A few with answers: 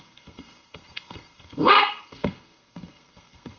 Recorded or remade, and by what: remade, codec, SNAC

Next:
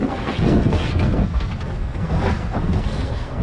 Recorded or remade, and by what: remade, codec, SNAC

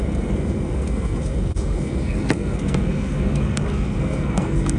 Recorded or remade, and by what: remade, codec, SNAC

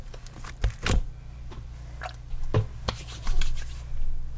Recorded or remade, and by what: recorded